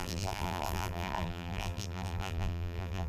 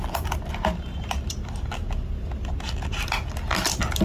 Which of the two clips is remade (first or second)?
first